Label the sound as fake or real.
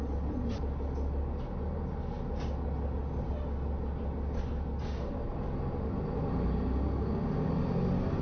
real